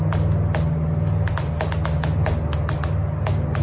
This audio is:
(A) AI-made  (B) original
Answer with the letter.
B